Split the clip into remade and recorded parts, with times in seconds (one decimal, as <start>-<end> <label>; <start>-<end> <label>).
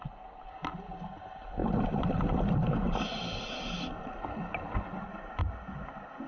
0.0-6.3 recorded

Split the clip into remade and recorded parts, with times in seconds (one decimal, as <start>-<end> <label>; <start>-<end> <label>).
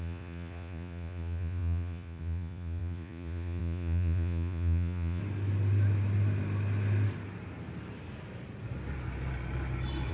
0.0-5.2 remade; 5.2-10.1 recorded